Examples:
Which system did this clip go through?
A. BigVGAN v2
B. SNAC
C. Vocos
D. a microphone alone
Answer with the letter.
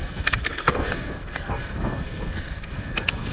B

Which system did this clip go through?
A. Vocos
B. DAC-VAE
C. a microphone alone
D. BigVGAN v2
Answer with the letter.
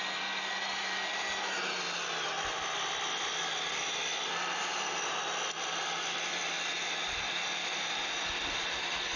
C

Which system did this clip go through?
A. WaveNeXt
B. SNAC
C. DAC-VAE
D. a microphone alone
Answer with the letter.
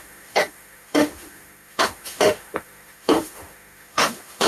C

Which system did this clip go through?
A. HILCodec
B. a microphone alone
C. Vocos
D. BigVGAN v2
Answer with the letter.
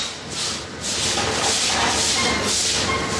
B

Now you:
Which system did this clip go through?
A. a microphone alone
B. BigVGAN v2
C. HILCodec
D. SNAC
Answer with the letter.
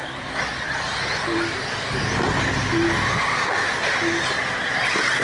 A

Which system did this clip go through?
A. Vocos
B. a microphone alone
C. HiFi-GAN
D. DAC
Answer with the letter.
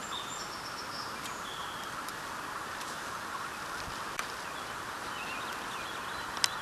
B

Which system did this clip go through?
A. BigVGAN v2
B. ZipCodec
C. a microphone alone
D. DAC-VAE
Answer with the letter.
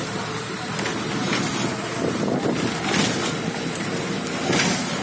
C